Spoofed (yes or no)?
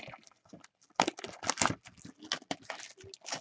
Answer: no